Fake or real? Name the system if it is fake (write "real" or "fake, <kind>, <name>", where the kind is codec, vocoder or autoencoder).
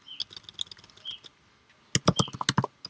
real